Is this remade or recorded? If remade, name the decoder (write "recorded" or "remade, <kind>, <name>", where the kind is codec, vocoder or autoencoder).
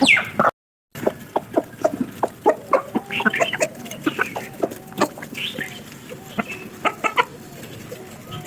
recorded